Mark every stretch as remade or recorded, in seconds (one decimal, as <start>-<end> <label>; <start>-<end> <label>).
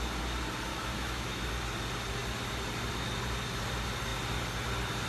0.0-0.7 recorded; 0.7-1.5 remade; 1.5-5.1 recorded